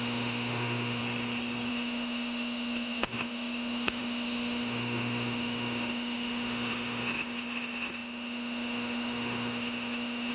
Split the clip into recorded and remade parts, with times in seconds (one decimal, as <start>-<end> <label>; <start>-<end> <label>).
0.0-1.0 remade; 1.0-1.7 recorded; 1.7-10.3 remade